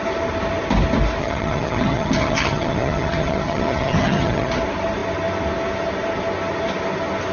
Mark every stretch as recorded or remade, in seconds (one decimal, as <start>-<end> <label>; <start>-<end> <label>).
0.0-1.2 recorded; 1.2-4.5 remade; 4.5-7.3 recorded